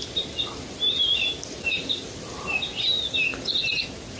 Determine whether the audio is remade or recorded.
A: recorded